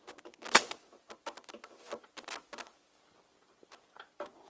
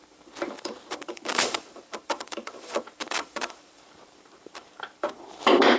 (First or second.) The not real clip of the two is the second